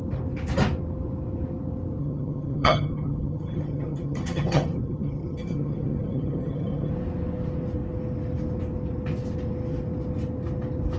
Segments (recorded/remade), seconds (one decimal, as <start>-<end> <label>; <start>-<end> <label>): 0.0-2.0 recorded; 2.0-6.9 remade; 6.9-11.0 recorded